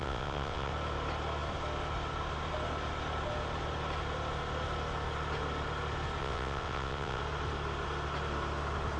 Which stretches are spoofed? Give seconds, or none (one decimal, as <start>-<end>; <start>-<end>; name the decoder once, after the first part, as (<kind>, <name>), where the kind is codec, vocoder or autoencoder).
0.0-0.7 (vocoder, WaveNeXt); 6.2-7.2